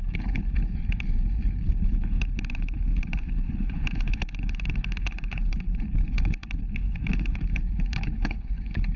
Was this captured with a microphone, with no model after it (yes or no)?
no